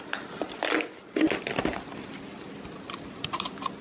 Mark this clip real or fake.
real